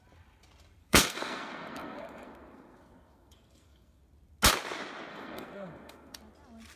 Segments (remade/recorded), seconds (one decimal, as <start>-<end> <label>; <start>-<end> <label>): 0.0-0.8 recorded; 0.8-4.0 remade; 4.0-5.1 recorded; 5.1-6.2 remade; 6.2-6.8 recorded